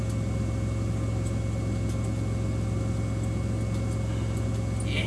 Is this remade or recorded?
recorded